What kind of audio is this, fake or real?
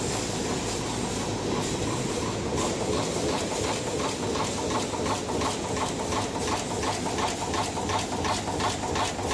real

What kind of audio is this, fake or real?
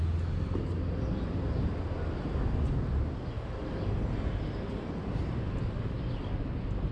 real